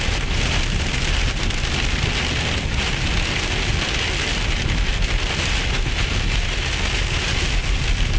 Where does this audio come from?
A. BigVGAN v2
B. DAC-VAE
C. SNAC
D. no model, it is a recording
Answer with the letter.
D